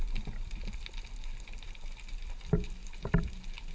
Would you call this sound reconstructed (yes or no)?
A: yes